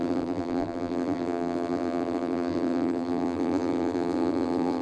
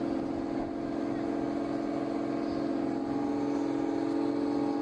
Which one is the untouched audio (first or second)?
second